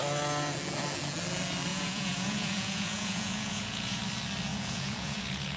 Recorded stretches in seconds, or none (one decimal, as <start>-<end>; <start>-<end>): 0.0-1.7; 4.0-4.5